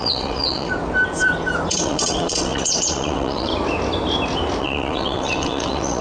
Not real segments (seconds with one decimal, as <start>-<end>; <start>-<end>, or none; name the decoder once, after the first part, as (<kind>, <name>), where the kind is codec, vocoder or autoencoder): 0.0-0.7 (vocoder, WaveNeXt); 1.7-3.5; 4.6-6.0